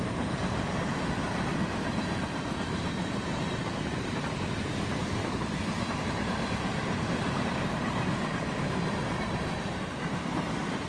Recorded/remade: remade